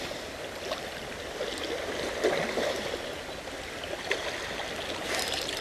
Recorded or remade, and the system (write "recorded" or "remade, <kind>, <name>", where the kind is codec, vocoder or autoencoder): recorded